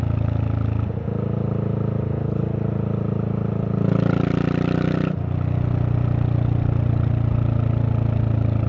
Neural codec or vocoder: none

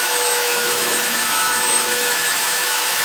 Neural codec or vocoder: autoencoder, DAC-VAE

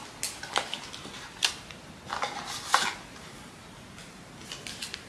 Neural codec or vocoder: none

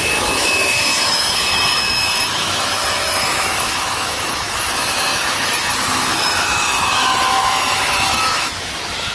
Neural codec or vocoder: autoencoder, DAC-VAE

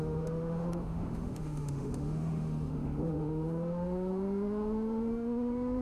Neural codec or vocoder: autoencoder, DAC-VAE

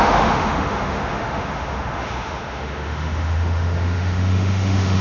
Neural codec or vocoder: autoencoder, DAC-VAE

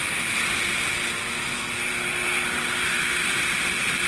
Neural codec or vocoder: none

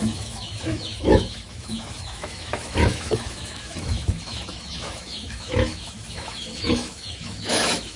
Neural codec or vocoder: autoencoder, DAC-VAE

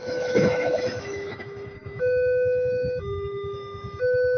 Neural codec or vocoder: autoencoder, DAC-VAE